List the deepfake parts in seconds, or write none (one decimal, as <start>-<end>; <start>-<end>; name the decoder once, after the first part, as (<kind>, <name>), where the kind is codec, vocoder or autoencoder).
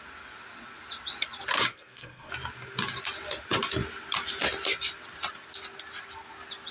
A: 1.7-2.3 (codec, SNAC)